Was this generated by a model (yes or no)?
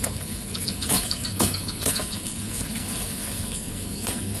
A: yes